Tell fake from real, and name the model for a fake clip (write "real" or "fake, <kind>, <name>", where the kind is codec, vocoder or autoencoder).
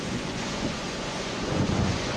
fake, vocoder, Vocos